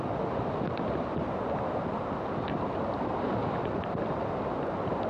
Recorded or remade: recorded